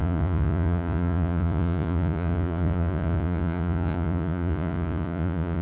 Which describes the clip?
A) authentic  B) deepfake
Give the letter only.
B